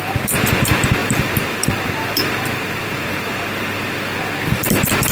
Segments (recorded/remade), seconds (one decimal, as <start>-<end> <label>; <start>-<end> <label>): 0.0-1.0 recorded; 1.0-3.4 remade; 3.4-5.1 recorded